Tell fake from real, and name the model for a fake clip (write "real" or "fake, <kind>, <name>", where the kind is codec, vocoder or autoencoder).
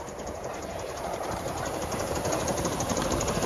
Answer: fake, vocoder, BigVGAN v2